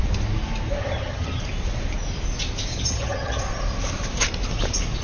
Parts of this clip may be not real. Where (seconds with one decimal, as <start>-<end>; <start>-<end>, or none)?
0.8-1.4; 2.7-3.4